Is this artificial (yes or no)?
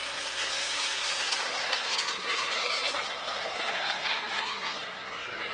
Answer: yes